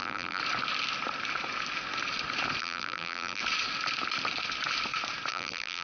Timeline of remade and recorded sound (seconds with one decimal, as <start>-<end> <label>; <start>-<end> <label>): 0.0-0.4 remade; 0.4-2.6 recorded; 2.6-3.4 remade; 3.4-5.3 recorded; 5.3-5.8 remade